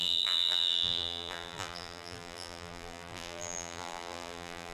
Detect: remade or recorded remade